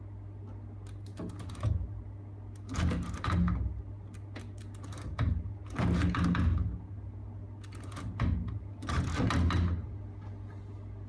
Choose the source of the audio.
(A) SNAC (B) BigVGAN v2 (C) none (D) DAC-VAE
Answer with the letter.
C